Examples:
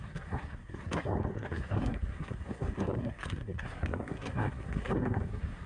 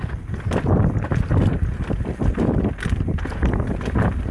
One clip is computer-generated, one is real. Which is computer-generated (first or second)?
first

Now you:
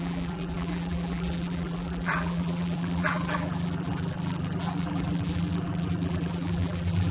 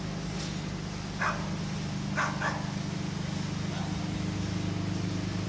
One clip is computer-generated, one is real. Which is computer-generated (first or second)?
first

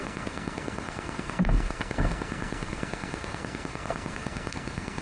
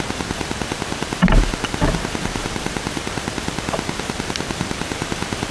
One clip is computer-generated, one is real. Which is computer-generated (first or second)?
first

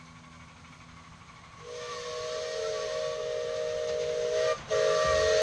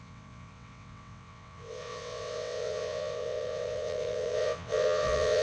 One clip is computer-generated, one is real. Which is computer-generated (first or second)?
second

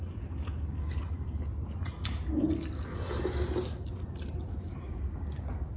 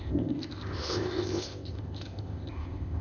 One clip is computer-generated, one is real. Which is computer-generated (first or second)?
second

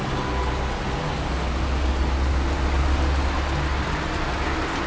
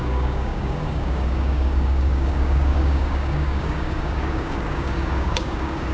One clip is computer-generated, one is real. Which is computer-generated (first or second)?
second